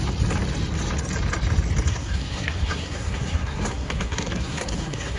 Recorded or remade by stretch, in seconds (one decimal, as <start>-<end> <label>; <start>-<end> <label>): 0.0-1.9 recorded; 1.9-5.2 remade